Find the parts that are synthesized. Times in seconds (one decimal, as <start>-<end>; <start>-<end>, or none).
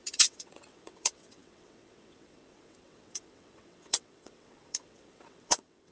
0.0-5.9